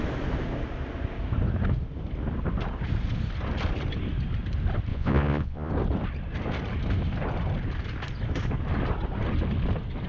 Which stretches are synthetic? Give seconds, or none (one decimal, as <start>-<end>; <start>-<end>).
4.9-5.7